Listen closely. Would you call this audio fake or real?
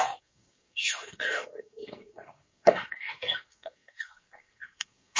fake